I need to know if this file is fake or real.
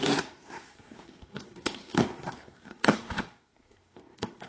fake